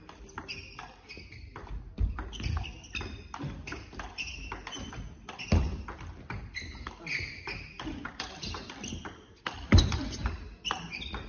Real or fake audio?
real